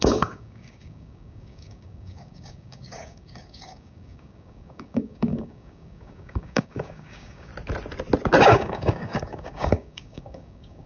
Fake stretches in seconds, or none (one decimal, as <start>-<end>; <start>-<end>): 0.0-7.5; 8.4-10.9